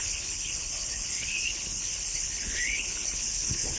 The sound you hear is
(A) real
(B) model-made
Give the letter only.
B